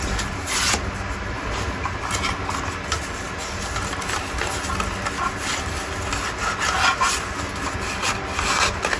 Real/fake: real